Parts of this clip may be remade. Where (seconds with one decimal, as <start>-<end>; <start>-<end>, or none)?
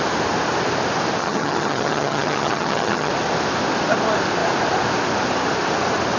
1.2-3.1